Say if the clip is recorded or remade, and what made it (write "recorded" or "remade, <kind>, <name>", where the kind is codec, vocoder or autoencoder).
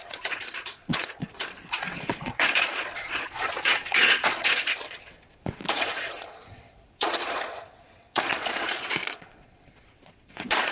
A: remade, vocoder, Vocos